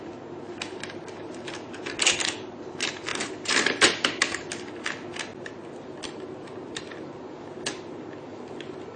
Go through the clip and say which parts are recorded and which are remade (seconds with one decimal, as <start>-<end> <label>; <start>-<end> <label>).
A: 0.0-3.1 recorded; 3.1-4.5 remade; 4.5-9.0 recorded